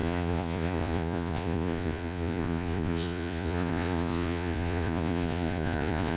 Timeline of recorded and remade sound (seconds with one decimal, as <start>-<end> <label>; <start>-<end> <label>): 0.0-6.2 remade